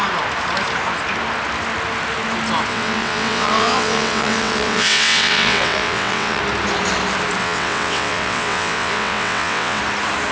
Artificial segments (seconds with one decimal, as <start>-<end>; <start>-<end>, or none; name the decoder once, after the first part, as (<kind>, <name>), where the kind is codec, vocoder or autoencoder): 2.7-6.4 (vocoder, WaveNeXt); 7.4-9.8